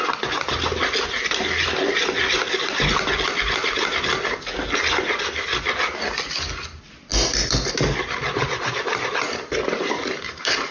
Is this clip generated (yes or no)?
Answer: no